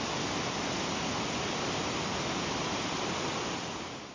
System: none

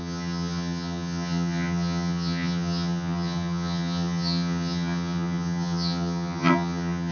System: vocoder, HiFi-GAN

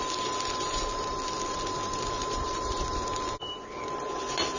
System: vocoder, BigVGAN v2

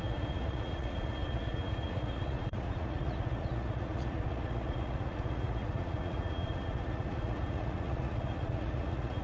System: vocoder, Vocos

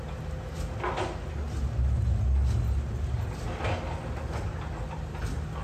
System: none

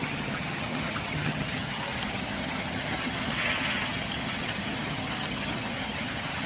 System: vocoder, HiFi-GAN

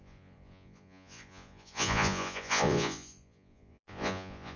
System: vocoder, Vocos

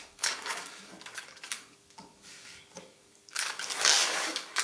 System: codec, DAC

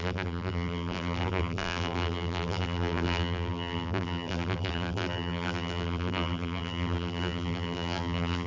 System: vocoder, BigVGAN v2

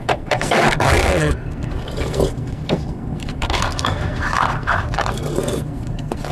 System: codec, SNAC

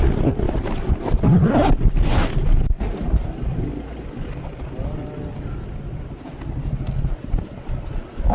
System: none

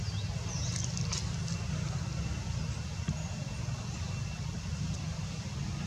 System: none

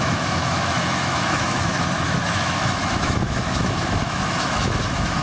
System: autoencoder, DAC-VAE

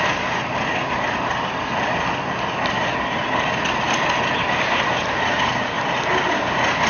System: none